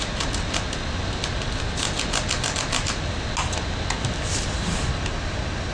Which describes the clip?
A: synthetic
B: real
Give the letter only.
B